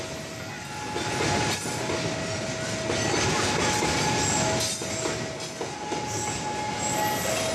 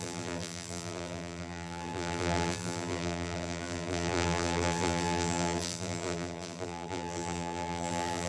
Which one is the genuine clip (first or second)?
first